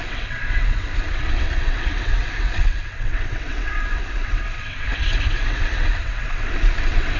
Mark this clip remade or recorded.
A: remade